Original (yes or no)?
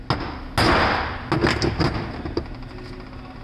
yes